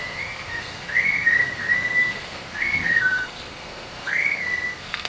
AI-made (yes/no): yes